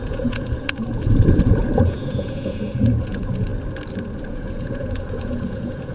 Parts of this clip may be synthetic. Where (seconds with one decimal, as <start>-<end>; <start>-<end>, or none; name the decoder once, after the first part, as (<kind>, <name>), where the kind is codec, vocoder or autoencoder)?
0.0-3.5 (vocoder, Vocos); 4.3-5.9